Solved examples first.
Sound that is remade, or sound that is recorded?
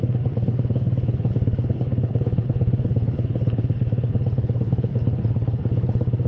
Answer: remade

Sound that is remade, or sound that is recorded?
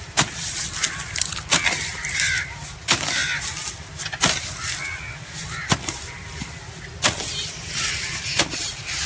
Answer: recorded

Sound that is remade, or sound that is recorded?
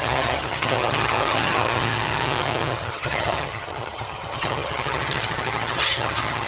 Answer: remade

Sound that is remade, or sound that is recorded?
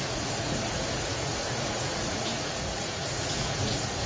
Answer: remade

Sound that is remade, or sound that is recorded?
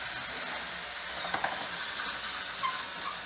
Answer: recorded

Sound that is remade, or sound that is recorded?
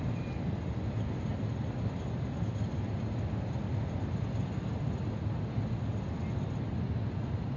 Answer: recorded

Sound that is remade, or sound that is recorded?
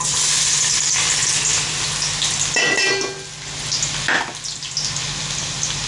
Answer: recorded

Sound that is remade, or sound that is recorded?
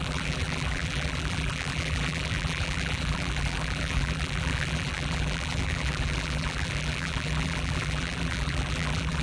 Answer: remade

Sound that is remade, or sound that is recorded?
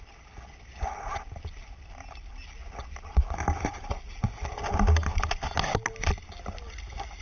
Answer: recorded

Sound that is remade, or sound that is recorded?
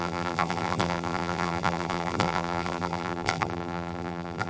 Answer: remade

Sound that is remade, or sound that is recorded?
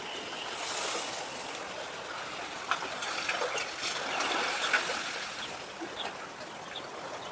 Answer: recorded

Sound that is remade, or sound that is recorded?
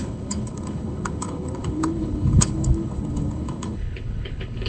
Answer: remade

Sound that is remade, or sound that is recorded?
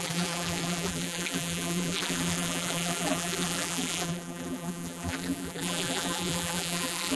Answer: remade